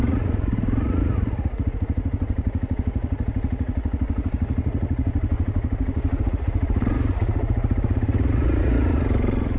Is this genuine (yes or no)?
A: no